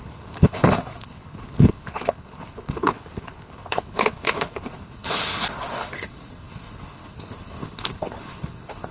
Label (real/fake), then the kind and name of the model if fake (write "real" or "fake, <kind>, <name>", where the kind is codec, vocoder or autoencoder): fake, codec, HILCodec